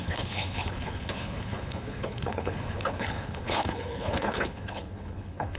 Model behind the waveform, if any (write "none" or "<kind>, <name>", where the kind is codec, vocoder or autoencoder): codec, HILCodec